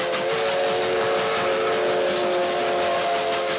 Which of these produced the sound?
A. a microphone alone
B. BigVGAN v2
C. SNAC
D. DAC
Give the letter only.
A